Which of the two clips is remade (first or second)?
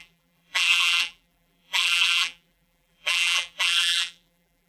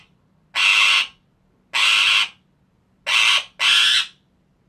first